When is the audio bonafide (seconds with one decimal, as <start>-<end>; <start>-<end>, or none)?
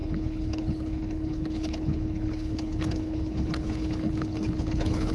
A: none